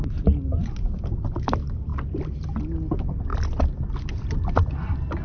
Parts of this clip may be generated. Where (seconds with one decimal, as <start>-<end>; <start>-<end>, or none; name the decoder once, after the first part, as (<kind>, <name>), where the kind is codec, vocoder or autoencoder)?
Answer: none